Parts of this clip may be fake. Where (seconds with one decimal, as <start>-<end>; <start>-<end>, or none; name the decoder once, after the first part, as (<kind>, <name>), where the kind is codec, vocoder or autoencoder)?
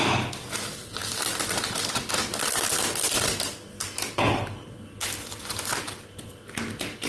none